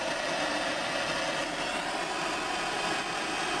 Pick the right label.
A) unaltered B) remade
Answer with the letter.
A